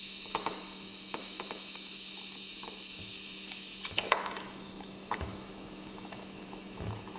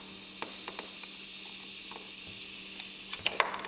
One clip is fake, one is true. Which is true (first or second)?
second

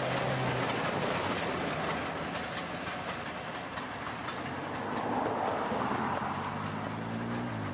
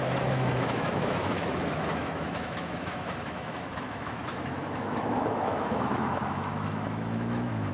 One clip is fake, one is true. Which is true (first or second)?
first